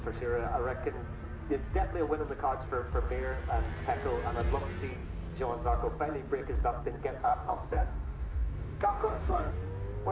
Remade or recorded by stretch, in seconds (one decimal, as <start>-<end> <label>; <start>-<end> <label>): 0.0-7.2 recorded; 7.2-9.5 remade; 9.5-10.1 recorded